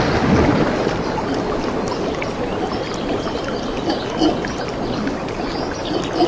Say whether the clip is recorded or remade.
recorded